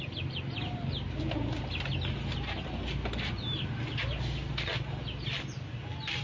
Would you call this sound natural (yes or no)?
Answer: yes